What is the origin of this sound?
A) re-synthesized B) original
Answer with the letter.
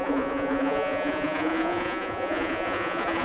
A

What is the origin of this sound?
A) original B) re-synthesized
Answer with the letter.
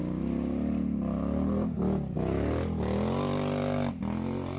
A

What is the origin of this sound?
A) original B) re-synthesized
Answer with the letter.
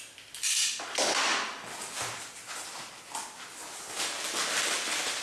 A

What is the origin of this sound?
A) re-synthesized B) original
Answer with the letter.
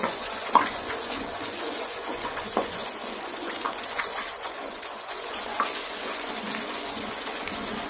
A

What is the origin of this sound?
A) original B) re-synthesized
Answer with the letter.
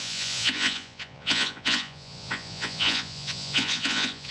B